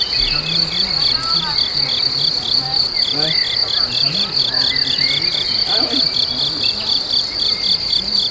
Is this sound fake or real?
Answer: real